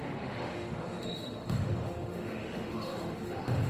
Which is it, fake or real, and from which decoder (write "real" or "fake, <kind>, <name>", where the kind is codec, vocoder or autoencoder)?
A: fake, autoencoder, DAC-VAE